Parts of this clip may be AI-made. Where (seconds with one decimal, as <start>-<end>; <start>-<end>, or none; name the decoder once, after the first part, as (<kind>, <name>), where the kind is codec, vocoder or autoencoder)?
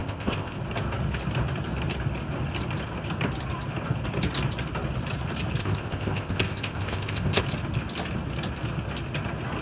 0.0-0.6 (codec, ZipCodec); 5.6-7.4